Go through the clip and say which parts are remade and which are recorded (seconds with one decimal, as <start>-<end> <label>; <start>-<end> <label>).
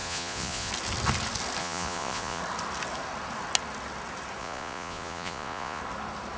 0.0-0.7 remade; 0.7-1.6 recorded; 1.6-2.4 remade; 2.4-4.4 recorded; 4.4-5.8 remade; 5.8-6.4 recorded